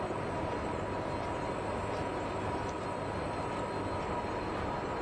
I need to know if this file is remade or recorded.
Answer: recorded